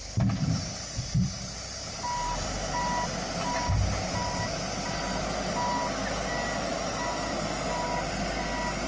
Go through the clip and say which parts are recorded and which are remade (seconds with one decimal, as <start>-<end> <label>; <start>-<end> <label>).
0.0-8.9 recorded